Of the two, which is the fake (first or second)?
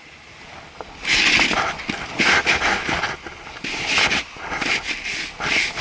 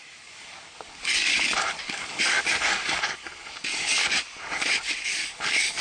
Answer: second